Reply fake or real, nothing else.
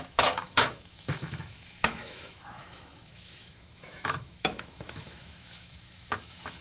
fake